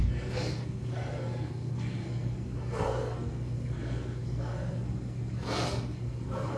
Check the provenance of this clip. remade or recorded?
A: remade